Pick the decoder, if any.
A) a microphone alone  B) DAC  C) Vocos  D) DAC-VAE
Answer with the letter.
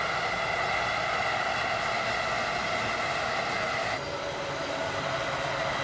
A